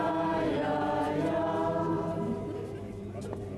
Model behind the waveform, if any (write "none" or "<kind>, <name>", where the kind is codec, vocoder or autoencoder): none